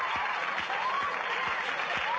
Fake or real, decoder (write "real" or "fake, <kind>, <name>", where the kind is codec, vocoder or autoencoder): real